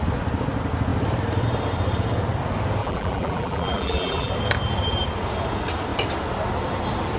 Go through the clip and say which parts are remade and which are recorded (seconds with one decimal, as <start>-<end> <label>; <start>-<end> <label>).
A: 0.0-2.8 recorded; 2.8-4.3 remade; 4.3-7.2 recorded